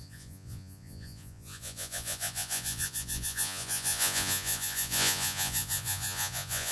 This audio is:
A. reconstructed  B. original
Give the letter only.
A